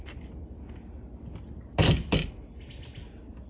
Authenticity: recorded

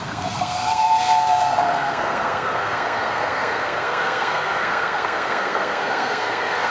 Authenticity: remade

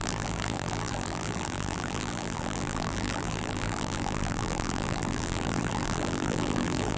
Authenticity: remade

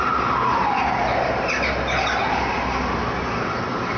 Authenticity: recorded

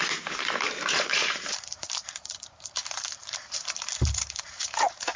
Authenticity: remade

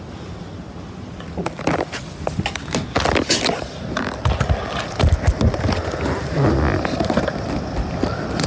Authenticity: recorded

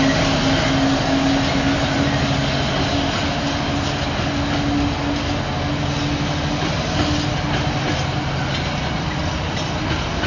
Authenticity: recorded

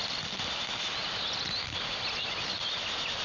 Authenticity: recorded